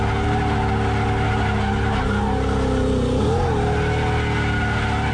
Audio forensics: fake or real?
real